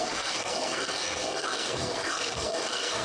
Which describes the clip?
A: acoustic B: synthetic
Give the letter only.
B